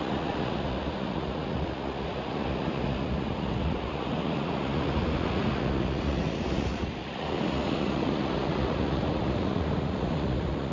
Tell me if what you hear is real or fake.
fake